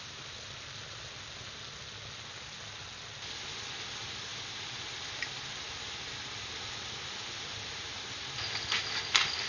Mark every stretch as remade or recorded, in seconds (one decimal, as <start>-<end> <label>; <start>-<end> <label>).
0.0-9.5 recorded